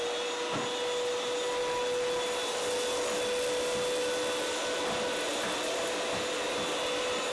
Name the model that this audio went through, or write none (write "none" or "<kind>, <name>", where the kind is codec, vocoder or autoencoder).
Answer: none